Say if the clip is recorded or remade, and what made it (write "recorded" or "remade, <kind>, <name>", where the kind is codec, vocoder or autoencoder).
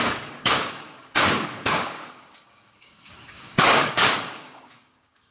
remade, codec, DAC